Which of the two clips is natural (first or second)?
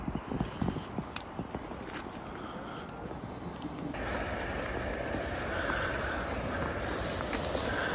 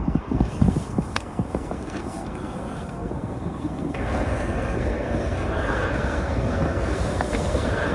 first